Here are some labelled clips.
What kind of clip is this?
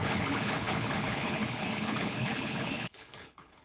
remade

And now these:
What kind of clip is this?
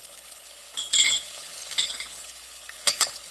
remade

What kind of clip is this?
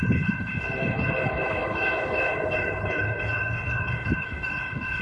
remade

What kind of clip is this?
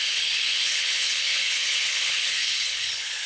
remade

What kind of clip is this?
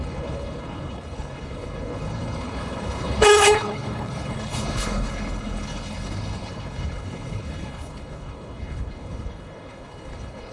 remade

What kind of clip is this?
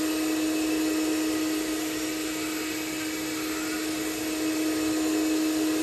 recorded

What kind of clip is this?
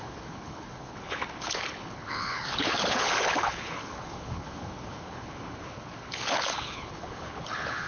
remade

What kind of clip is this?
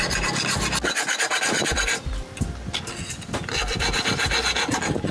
recorded